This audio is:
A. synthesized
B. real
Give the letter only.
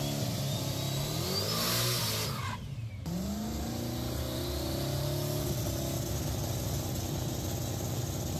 B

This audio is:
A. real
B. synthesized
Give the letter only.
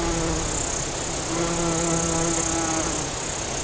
A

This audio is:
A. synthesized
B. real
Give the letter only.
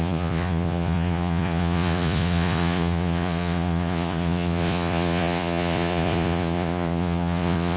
A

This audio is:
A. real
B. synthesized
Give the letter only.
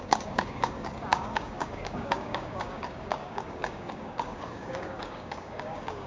B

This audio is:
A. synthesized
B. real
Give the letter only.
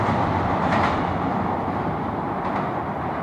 B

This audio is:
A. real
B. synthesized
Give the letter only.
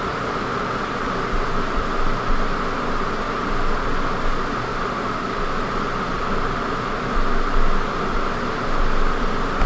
A